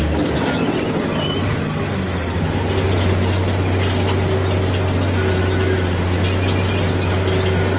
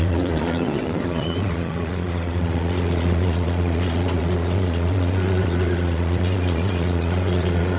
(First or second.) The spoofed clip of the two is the second